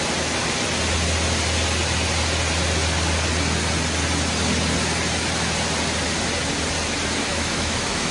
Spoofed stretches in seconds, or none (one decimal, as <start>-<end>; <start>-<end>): 7.3-8.1